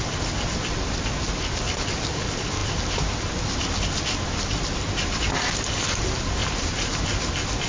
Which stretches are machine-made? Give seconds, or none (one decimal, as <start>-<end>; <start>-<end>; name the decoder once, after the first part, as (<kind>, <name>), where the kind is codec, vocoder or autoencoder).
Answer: 6.4-7.0 (vocoder, BigVGAN v2)